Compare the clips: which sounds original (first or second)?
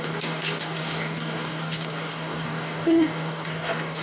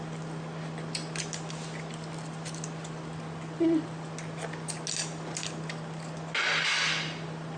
second